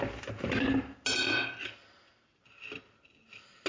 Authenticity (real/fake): real